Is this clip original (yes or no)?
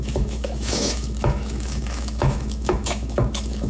no